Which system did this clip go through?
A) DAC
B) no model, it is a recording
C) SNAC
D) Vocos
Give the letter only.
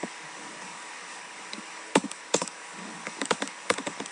A